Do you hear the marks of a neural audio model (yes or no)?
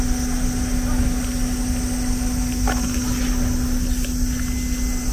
no